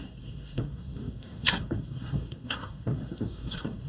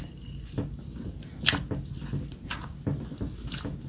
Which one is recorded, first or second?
second